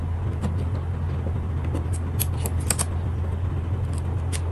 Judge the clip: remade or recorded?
recorded